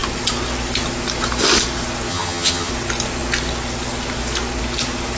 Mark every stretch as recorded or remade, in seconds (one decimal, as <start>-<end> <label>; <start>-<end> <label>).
0.0-2.1 recorded; 2.1-2.7 remade; 2.7-5.2 recorded